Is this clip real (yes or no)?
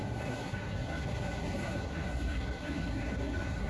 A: no